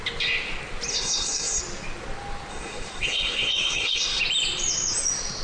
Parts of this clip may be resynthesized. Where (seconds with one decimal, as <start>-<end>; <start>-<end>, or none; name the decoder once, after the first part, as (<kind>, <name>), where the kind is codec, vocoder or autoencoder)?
0.9-1.6 (codec, SNAC); 2.5-4.2